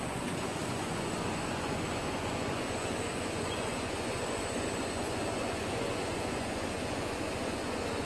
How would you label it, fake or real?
fake